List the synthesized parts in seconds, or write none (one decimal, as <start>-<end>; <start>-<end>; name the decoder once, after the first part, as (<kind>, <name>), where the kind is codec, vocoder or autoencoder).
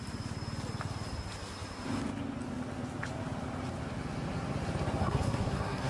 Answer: 5.0-5.9 (codec, SNAC)